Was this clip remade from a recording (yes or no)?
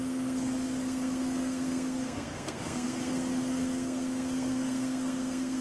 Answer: yes